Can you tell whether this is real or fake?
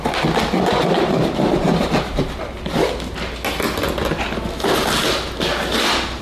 real